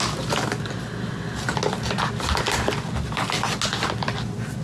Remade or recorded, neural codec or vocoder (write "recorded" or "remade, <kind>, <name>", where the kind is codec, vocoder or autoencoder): recorded